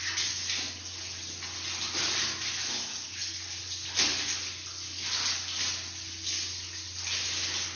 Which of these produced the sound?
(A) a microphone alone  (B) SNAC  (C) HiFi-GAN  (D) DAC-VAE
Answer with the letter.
A